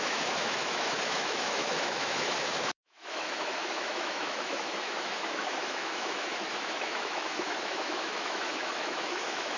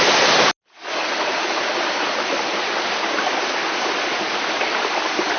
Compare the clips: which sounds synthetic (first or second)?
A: first